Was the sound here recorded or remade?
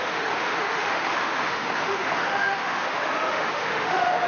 remade